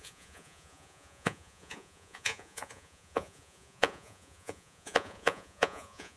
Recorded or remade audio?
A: remade